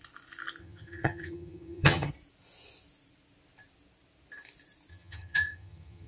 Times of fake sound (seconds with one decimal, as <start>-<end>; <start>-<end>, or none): 0.6-2.1; 4.9-6.1